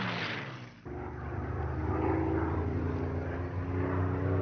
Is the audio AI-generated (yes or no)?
no